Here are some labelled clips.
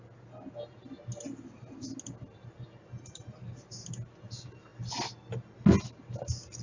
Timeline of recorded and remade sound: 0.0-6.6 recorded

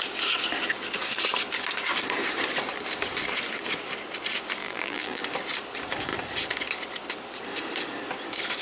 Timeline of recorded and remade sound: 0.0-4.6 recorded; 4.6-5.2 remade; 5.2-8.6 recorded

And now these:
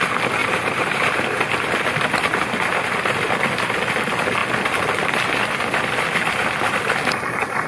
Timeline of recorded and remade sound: 0.0-0.4 recorded; 0.4-1.1 remade; 1.1-7.7 recorded

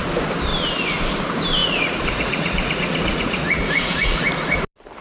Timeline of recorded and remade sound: 0.0-1.6 recorded; 1.6-4.6 remade; 4.6-5.0 recorded